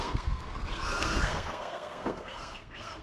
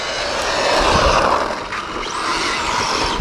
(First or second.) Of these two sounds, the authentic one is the second